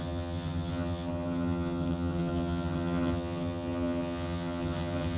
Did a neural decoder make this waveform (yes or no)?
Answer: yes